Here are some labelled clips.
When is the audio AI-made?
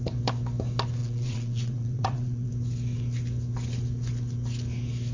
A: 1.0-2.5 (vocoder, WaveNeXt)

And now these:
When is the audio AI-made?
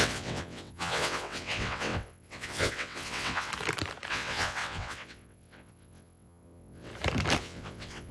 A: 0.0-3.5 (vocoder, WaveNeXt); 4.1-6.9; 7.4-8.1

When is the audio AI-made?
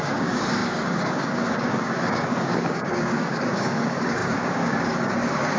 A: 0.0-5.6 (codec, DAC)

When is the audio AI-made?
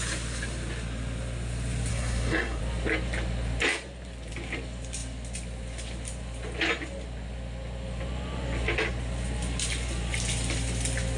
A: 1.9-2.6 (codec, SNAC)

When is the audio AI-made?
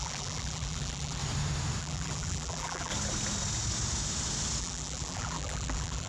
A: 0.0-1.2 (vocoder, BigVGAN v2); 1.8-2.9; 4.6-6.1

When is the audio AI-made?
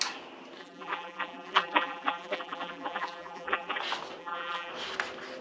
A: 0.6-3.8 (vocoder, BigVGAN v2); 4.2-4.7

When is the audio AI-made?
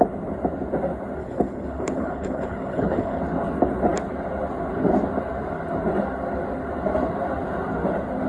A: 1.2-3.2 (codec, HILCodec)